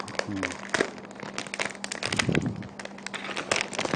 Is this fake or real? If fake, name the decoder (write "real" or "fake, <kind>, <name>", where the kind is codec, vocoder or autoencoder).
real